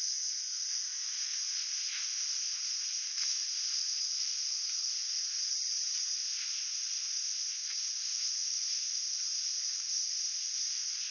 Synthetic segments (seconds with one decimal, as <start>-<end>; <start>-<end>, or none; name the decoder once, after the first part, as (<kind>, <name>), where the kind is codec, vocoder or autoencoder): 0.0-5.4 (codec, ZipCodec); 6.1-11.1